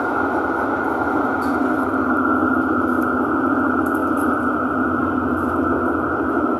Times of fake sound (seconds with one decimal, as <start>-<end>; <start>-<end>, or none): none